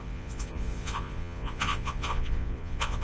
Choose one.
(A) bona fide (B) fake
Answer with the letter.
B